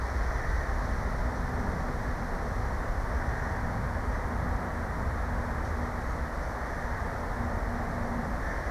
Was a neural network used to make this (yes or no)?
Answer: no